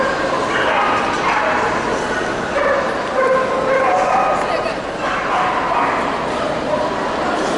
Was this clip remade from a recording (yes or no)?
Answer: no